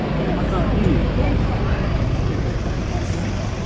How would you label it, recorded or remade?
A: recorded